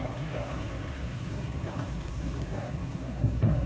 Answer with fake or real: fake